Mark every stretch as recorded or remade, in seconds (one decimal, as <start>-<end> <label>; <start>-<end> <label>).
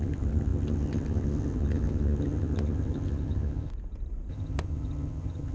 0.0-3.7 remade; 3.7-4.3 recorded; 4.3-5.5 remade